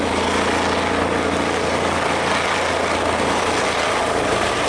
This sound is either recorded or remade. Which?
recorded